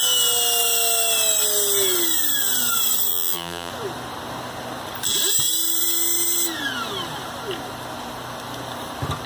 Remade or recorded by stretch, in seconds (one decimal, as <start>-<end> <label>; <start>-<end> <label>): 0.0-3.1 recorded; 3.1-3.7 remade; 3.7-9.3 recorded